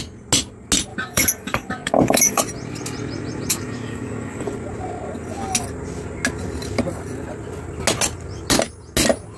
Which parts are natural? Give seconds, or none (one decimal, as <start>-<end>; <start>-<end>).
0.0-0.9; 2.4-3.5; 4.5-9.4